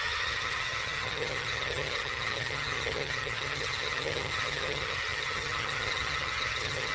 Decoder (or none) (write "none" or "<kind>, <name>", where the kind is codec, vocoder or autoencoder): vocoder, HiFi-GAN